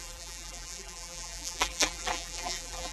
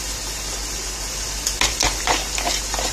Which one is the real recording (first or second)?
second